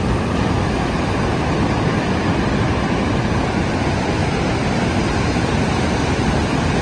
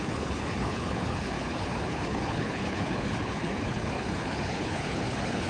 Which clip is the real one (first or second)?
first